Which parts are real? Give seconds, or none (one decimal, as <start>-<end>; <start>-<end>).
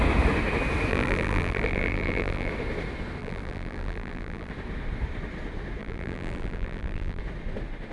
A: 0.0-0.9; 2.5-3.2; 4.5-5.8; 7.2-7.9